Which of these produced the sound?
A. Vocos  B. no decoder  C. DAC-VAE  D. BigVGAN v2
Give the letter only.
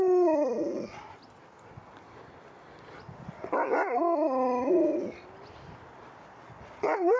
B